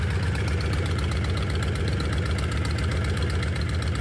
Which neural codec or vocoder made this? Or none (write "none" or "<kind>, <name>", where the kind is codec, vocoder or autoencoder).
vocoder, BigVGAN v2